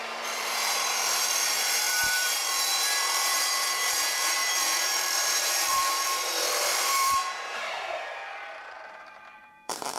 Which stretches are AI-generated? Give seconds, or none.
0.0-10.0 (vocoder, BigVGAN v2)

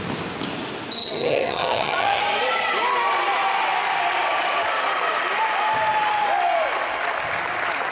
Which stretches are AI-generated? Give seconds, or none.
1.0-2.2 (vocoder, HiFi-GAN)

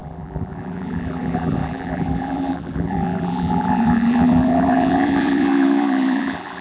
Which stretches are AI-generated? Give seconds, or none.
0.0-6.6 (vocoder, BigVGAN v2)

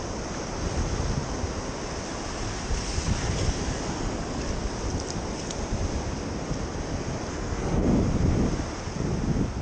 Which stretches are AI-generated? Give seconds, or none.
7.3-7.9 (codec, SNAC)

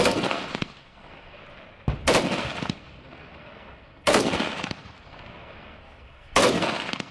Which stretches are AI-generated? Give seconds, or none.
0.0-1.4 (codec, SNAC); 2.2-7.1

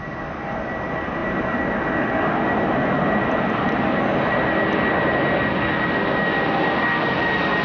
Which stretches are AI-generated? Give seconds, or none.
none

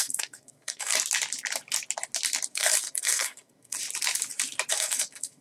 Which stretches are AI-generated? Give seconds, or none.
0.0-0.9 (codec, SNAC); 2.5-3.8; 4.7-5.4